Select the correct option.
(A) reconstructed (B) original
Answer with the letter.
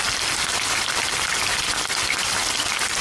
B